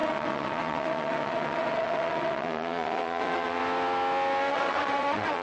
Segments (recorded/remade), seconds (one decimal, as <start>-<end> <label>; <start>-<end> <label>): 0.0-3.6 remade; 3.6-4.5 recorded; 4.5-5.4 remade